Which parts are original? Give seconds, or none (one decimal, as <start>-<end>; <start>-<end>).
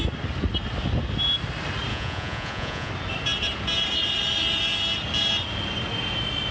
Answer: 0.0-1.9; 2.9-6.5